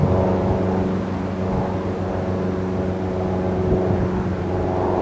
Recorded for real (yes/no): yes